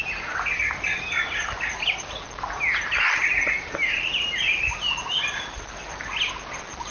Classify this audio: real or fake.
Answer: real